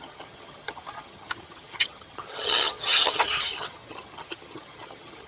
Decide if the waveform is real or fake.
fake